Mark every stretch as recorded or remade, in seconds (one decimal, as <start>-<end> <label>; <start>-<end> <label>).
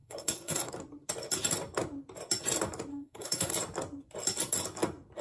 0.0-0.7 remade; 0.7-2.9 recorded; 2.9-3.5 remade; 3.5-5.2 recorded